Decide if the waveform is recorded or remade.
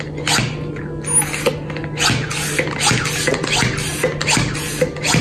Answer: recorded